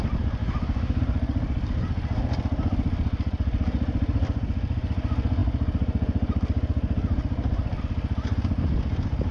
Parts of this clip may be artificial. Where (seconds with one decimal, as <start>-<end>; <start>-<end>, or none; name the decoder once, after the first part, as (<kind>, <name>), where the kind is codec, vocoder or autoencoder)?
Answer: 0.4-1.0 (autoencoder, DAC-VAE)